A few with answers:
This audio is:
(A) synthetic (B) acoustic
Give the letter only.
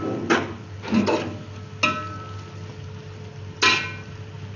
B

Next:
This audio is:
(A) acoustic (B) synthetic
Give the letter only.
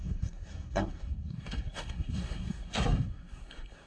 B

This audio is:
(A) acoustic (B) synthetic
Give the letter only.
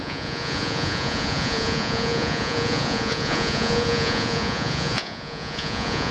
B